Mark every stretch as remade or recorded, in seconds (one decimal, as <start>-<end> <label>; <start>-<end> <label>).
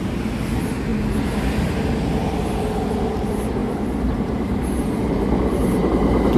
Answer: 0.0-6.4 recorded